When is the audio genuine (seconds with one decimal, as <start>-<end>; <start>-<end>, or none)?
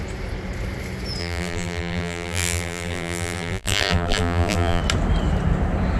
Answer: 0.0-1.2; 4.8-6.0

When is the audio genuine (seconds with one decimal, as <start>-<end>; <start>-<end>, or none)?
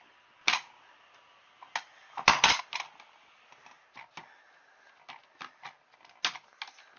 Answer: 0.0-7.0